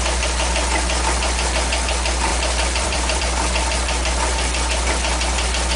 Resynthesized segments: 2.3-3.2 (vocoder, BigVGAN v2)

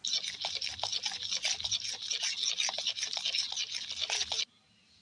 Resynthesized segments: none

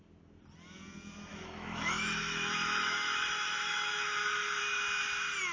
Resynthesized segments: 1.3-4.6 (autoencoder, DAC-VAE)

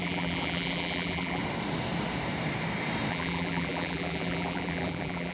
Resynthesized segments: 0.0-1.4 (vocoder, BigVGAN v2); 3.1-5.3